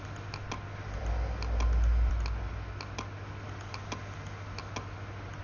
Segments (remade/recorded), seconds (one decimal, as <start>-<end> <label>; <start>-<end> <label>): 0.0-5.4 recorded